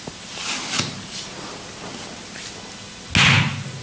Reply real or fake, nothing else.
real